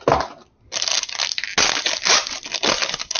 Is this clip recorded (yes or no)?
yes